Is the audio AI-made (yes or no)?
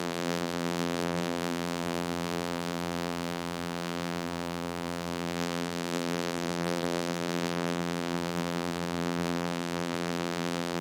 yes